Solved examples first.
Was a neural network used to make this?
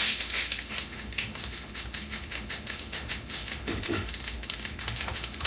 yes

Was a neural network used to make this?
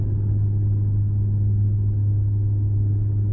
no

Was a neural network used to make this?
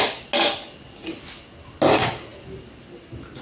no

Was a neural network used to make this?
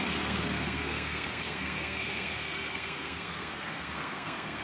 yes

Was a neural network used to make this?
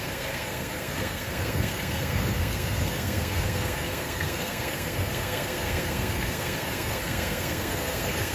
yes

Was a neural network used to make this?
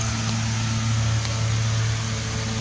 no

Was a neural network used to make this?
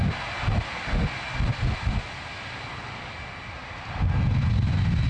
no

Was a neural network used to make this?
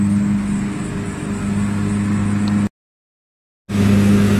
no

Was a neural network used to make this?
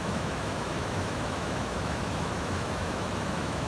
yes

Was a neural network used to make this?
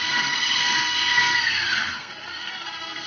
yes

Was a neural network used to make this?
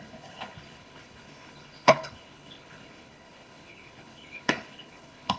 yes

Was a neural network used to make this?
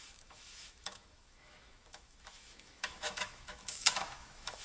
yes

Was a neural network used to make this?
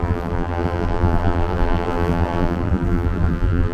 yes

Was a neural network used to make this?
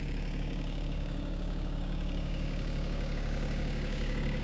yes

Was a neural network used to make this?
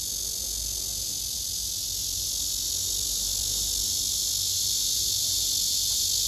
no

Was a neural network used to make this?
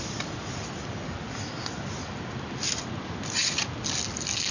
no